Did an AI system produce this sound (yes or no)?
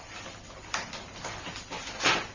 no